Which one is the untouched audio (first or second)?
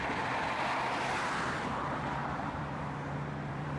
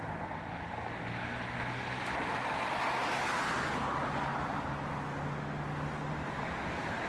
second